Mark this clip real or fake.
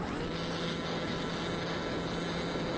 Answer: real